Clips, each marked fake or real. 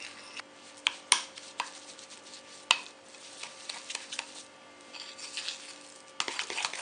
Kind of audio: real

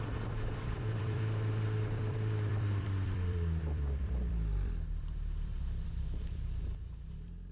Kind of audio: fake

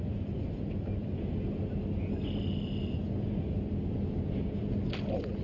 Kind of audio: real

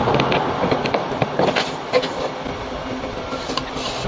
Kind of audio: real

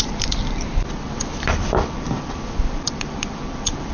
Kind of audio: fake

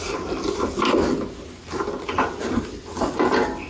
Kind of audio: real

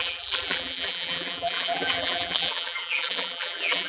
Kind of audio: fake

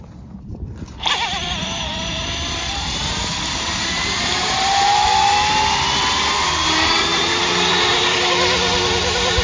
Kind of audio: fake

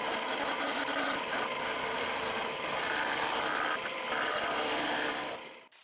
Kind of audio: fake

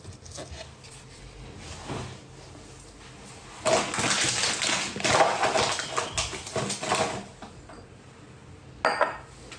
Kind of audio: real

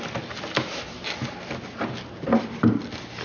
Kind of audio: real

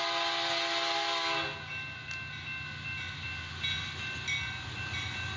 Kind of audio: real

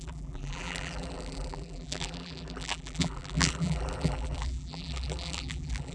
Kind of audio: fake